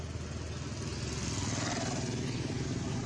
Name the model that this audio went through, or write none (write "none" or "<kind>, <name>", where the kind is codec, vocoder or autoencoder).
none